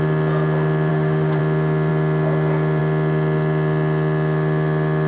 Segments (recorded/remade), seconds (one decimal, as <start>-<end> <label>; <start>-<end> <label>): 0.0-0.9 recorded; 0.9-1.4 remade; 1.4-5.1 recorded